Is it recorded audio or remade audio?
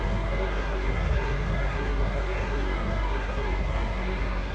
remade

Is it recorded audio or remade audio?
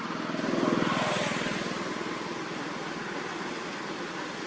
recorded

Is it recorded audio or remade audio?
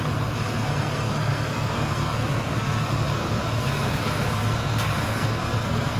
remade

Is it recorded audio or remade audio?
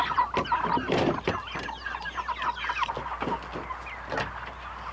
recorded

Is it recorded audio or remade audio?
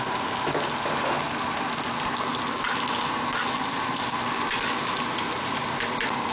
recorded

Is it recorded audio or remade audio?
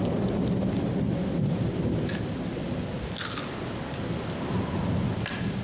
recorded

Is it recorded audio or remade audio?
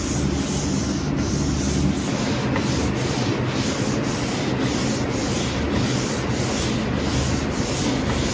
recorded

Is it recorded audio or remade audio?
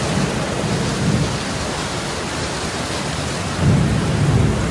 recorded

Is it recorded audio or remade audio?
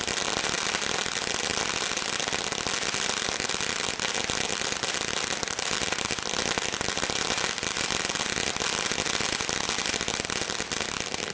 recorded